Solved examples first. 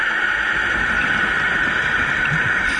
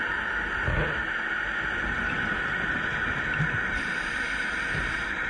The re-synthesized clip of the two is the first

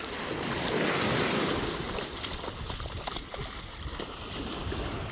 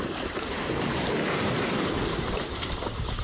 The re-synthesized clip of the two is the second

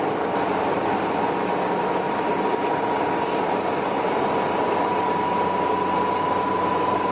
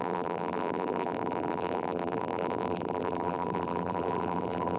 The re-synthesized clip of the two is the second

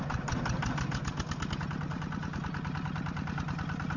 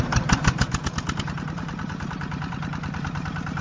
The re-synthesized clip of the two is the second